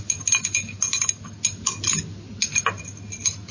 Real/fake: real